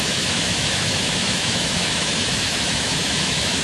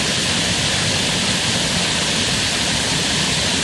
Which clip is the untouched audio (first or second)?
second